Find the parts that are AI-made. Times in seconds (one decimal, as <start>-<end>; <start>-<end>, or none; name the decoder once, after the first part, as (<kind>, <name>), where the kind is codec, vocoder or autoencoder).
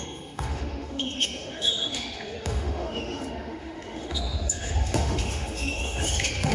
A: 0.0-6.5 (autoencoder, DAC-VAE)